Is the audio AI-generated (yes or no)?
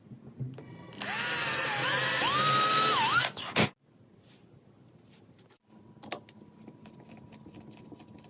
no